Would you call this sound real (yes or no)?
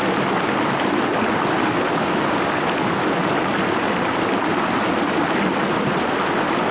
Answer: yes